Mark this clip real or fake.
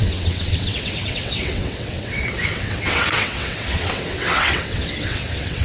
fake